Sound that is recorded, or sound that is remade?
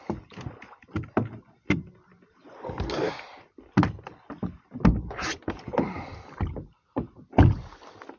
recorded